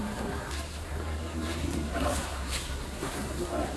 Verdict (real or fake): fake